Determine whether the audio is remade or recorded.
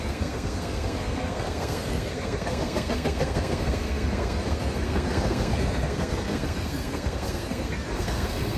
remade